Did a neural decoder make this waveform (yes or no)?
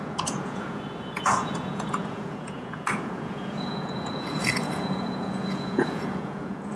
yes